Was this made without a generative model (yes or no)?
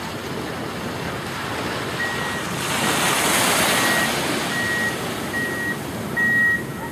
yes